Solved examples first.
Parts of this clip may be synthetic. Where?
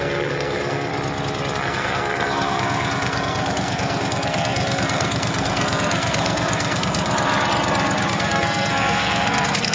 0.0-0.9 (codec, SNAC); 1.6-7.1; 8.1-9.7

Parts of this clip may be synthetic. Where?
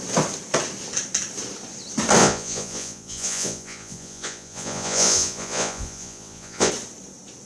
2.2-6.7 (vocoder, Vocos)